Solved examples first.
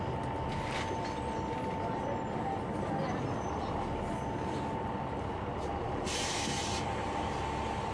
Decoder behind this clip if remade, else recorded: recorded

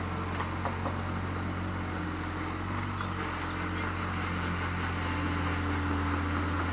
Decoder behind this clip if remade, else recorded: recorded